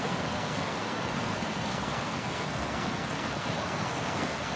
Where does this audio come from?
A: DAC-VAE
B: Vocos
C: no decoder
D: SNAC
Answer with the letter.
D